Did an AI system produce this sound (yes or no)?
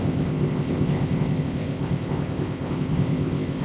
yes